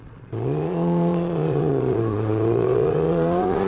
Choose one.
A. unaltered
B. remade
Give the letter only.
B